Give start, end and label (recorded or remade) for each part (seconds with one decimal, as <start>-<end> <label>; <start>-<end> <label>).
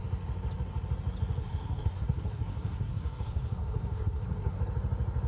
0.0-1.4 recorded; 1.4-4.6 remade; 4.6-5.3 recorded